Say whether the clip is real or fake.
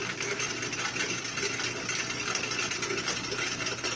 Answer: real